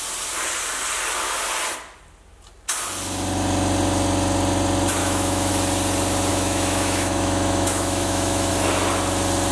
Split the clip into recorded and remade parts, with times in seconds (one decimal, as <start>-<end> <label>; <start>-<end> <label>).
0.0-5.0 recorded; 5.0-5.5 remade; 5.5-6.3 recorded; 6.3-8.5 remade; 8.5-9.5 recorded